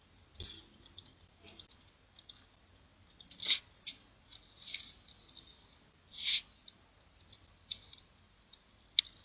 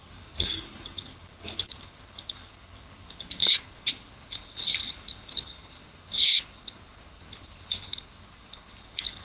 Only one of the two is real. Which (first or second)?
first